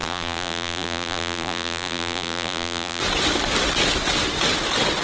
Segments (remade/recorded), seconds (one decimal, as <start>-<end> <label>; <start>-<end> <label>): 0.0-3.0 remade; 3.0-5.0 recorded